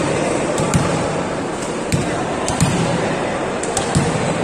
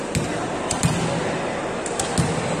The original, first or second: second